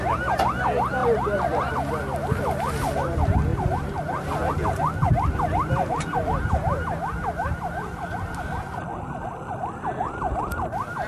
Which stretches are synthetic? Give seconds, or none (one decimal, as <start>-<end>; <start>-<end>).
3.5-4.5